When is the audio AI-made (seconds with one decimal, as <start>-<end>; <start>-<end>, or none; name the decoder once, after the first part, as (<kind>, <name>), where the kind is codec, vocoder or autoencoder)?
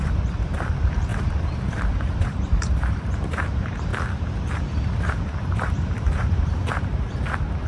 0.0-3.9 (vocoder, BigVGAN v2); 4.6-6.9